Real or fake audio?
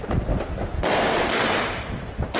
real